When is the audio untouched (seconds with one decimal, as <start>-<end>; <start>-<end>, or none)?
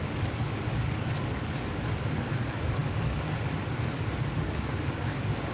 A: none